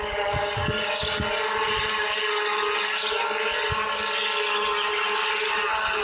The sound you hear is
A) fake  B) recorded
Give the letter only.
B